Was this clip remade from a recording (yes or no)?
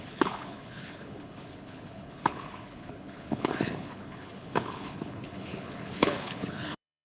yes